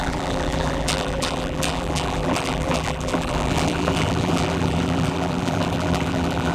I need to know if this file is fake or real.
fake